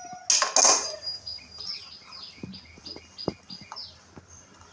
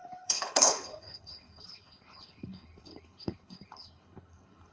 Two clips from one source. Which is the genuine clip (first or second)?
first